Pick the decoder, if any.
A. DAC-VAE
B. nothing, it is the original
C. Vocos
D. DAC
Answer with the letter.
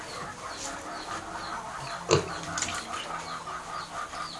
B